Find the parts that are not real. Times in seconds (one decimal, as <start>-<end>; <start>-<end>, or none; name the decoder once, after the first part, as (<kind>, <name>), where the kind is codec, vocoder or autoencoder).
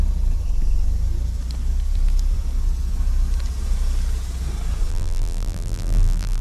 4.9-6.4 (vocoder, BigVGAN v2)